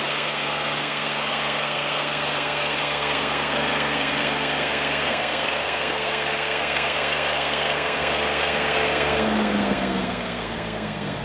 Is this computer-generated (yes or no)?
yes